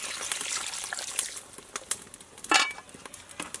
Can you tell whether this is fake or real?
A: real